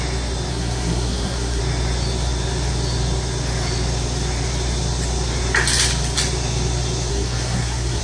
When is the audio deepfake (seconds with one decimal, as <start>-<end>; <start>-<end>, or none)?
0.5-1.6; 7.1-8.0